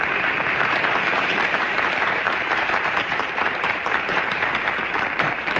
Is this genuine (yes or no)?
no